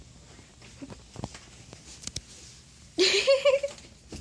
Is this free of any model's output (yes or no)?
yes